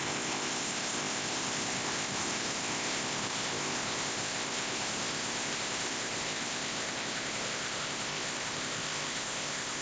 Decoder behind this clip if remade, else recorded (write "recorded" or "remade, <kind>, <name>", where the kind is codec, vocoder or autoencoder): remade, codec, ZipCodec